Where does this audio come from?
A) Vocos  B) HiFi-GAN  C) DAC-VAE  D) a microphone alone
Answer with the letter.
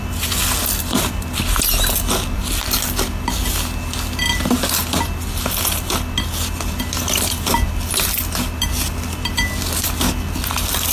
D